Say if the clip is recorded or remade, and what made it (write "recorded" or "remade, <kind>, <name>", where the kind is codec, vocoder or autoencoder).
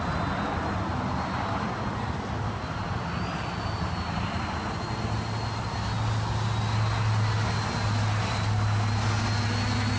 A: recorded